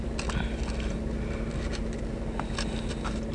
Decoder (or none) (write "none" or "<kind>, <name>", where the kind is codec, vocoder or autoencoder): none